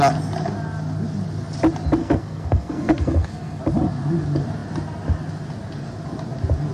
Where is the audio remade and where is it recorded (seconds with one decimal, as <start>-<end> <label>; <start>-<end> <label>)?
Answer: 0.0-2.0 recorded; 2.0-3.6 remade; 3.6-6.7 recorded